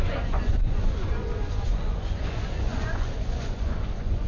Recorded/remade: remade